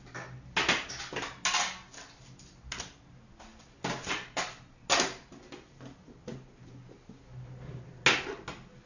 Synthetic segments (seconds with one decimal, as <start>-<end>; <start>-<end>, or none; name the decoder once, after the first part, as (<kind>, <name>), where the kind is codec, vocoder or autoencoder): none